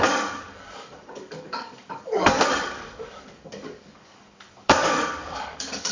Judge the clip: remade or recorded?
remade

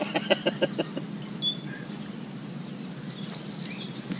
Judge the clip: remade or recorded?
recorded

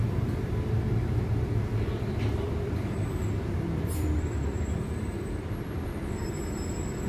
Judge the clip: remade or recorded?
remade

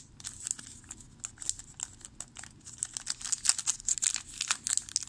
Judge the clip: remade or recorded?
recorded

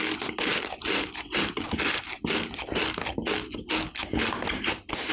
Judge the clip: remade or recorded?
recorded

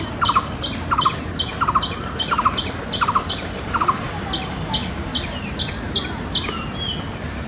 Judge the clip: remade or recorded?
recorded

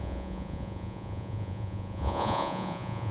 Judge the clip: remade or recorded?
remade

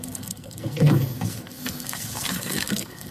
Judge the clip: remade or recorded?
remade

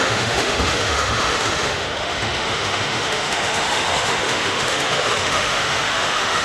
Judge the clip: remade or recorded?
remade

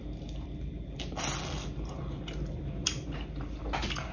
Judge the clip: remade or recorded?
recorded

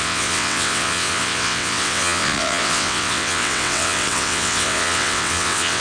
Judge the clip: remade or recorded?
remade